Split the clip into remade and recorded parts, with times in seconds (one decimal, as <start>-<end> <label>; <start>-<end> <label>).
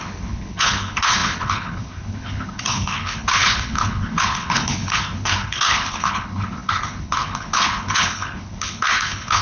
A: 0.0-9.4 remade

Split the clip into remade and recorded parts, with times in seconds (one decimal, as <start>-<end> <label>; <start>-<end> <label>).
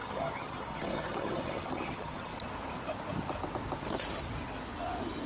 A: 0.0-2.3 remade; 2.3-5.3 recorded